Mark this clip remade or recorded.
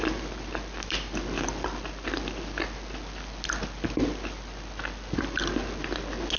recorded